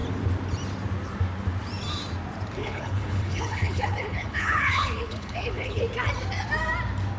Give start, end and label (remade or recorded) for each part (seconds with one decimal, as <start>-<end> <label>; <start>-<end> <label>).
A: 0.0-2.6 recorded; 2.6-5.8 remade; 5.8-7.2 recorded